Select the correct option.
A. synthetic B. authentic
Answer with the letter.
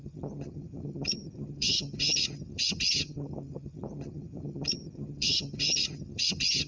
A